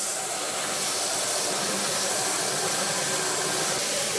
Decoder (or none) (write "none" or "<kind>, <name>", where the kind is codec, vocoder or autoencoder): none